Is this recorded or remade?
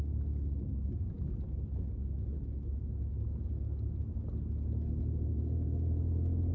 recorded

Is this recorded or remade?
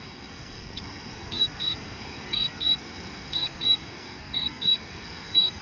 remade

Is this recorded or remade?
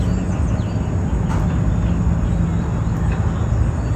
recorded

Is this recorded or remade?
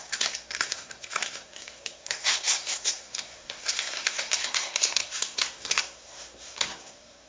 remade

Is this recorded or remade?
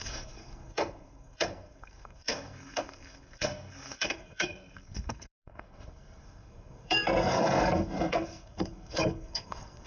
remade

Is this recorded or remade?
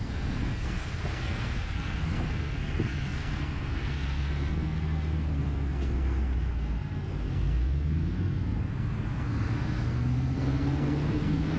remade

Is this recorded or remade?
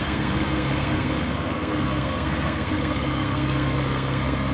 remade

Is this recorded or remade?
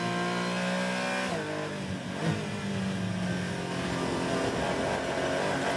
recorded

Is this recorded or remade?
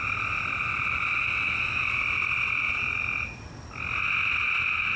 recorded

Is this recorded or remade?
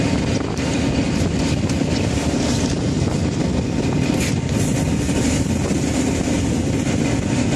recorded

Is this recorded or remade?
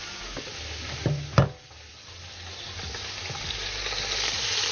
recorded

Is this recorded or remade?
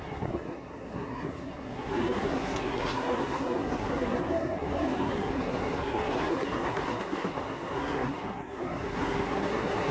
remade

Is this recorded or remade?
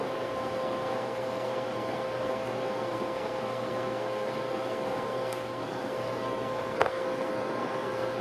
remade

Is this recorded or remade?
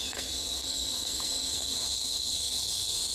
remade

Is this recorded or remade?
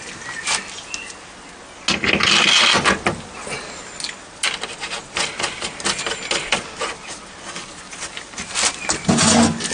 recorded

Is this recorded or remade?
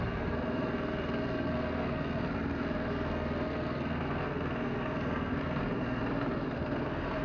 remade